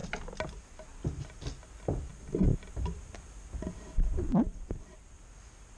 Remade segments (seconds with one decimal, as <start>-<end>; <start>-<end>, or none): none